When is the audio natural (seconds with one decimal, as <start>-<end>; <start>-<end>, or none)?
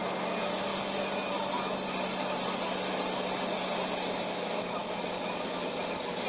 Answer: 0.0-6.3